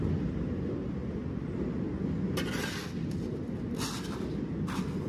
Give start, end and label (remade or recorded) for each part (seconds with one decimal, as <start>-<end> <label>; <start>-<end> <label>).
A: 0.0-5.1 recorded